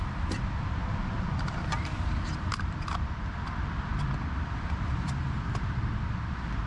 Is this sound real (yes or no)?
no